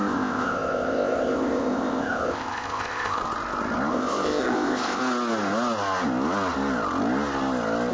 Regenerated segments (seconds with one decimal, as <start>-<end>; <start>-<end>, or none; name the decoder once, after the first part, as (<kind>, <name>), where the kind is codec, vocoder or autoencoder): 0.0-3.2 (codec, ZipCodec); 3.9-5.0